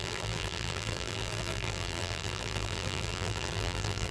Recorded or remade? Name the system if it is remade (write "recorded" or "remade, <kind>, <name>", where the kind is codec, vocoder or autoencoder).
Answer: remade, vocoder, BigVGAN v2